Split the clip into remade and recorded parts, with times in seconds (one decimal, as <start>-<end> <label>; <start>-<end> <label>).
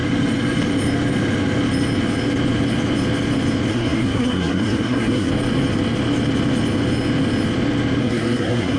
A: 0.0-3.7 recorded; 3.7-5.3 remade; 5.3-8.0 recorded; 8.0-8.8 remade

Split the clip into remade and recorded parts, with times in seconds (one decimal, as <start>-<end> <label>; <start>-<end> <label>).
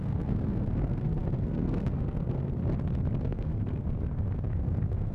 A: 0.0-2.6 remade; 2.6-3.2 recorded; 3.2-5.1 remade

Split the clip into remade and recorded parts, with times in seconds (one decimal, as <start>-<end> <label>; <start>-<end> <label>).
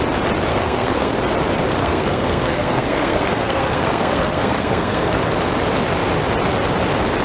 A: 0.0-0.5 recorded; 0.5-1.1 remade; 1.1-1.8 recorded; 1.8-5.2 remade; 5.2-7.2 recorded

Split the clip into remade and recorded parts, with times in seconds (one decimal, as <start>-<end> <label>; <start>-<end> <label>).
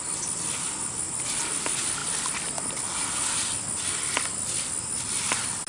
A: 0.0-5.7 recorded